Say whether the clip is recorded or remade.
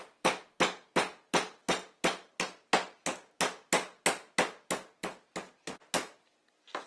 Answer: recorded